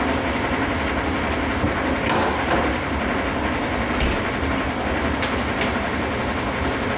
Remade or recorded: recorded